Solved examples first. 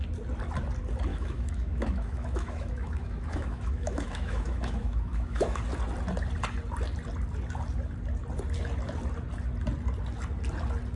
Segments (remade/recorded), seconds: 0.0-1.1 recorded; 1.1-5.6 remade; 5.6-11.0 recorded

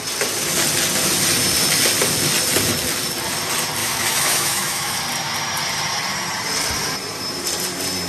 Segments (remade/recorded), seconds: 0.0-3.8 recorded; 3.8-5.0 remade; 5.0-8.1 recorded

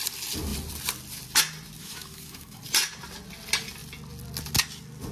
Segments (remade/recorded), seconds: 0.0-1.8 recorded; 1.8-2.6 remade; 2.6-5.1 recorded

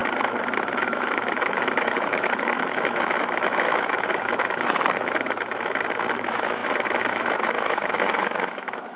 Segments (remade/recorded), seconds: 0.0-0.8 recorded; 0.8-9.0 remade

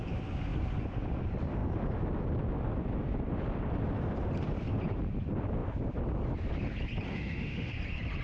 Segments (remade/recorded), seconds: 0.0-7.1 recorded; 7.1-7.7 remade; 7.7-8.2 recorded

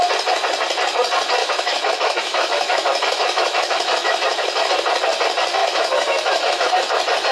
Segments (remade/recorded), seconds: 0.0-1.4 recorded; 1.4-4.7 remade; 4.7-5.6 recorded; 5.6-6.7 remade; 6.7-7.3 recorded

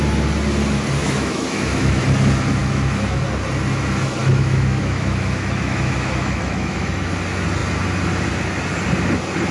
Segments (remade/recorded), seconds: 0.0-1.0 recorded; 1.0-2.0 remade; 2.0-2.6 recorded; 2.6-3.2 remade; 3.2-4.2 recorded; 4.2-7.1 remade; 7.1-9.5 recorded